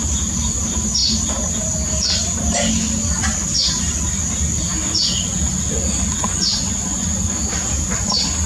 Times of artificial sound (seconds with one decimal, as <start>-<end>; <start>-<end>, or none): 6.2-7.3